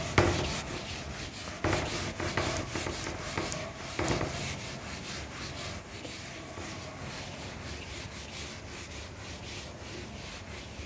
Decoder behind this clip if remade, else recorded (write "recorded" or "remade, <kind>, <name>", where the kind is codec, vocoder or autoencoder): recorded